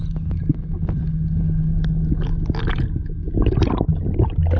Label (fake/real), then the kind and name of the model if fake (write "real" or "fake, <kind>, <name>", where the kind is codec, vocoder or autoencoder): real